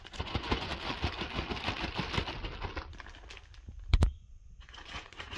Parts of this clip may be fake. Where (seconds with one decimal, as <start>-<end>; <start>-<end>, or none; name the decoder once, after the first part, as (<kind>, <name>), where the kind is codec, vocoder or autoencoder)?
0.0-0.7 (vocoder, Vocos); 3.9-5.4